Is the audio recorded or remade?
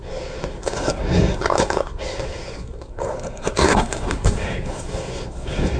remade